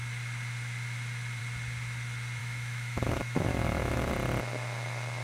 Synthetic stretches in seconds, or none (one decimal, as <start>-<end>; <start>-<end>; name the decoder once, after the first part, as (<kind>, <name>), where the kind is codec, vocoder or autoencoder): 2.4-4.1 (autoencoder, DAC-VAE)